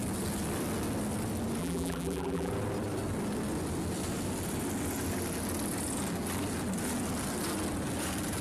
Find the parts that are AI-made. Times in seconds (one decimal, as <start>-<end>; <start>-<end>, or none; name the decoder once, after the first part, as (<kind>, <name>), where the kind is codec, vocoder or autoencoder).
1.6-2.5 (vocoder, BigVGAN v2)